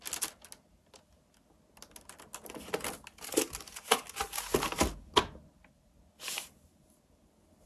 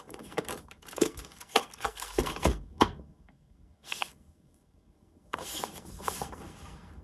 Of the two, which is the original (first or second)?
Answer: first